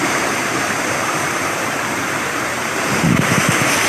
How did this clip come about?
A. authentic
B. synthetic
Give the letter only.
B